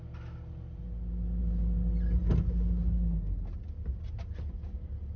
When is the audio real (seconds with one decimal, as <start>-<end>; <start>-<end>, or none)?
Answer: 0.0-5.2